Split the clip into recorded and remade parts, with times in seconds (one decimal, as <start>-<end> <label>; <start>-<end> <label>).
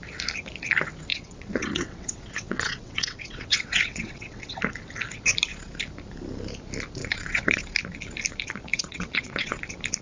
0.0-1.1 recorded; 1.1-4.6 remade; 4.6-7.0 recorded; 7.0-7.6 remade; 7.6-8.7 recorded; 8.7-9.6 remade; 9.6-10.0 recorded